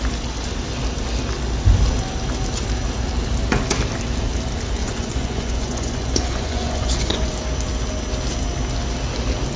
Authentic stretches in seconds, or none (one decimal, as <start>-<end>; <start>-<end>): 0.0-4.8; 7.3-9.6